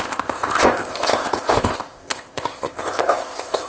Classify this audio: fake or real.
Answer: fake